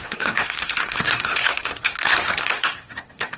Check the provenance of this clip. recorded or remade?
remade